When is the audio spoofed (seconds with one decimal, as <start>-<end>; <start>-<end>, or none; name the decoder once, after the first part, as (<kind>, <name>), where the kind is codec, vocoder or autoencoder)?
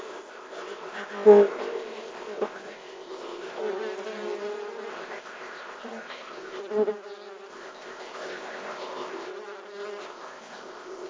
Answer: 0.0-3.6 (codec, ZipCodec); 4.9-6.6; 7.5-9.3; 10.0-11.1